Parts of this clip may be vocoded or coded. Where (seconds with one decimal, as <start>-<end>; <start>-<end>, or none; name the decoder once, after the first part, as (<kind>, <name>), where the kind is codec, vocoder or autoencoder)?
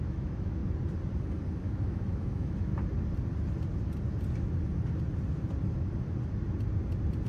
0.0-0.6 (autoencoder, DAC-VAE); 1.6-2.7